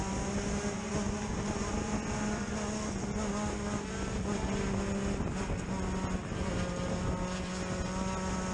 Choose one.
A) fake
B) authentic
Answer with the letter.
B